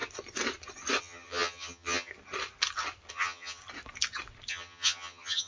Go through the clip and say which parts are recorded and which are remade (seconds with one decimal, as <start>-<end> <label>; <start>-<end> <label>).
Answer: 0.0-1.0 recorded; 1.0-2.1 remade; 2.1-3.1 recorded; 3.1-3.6 remade; 3.6-4.5 recorded; 4.5-5.5 remade